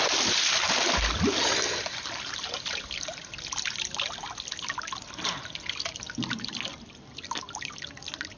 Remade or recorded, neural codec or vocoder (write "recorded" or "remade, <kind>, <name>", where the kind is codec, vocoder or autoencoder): recorded